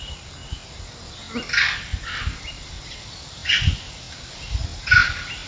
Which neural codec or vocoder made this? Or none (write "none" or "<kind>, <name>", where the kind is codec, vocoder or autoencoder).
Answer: none